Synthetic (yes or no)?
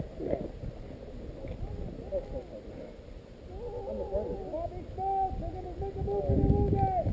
no